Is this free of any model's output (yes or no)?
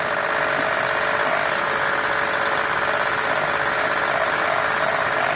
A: yes